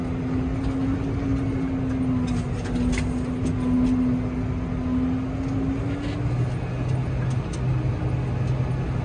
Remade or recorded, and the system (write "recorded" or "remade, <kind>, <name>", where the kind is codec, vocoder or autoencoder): recorded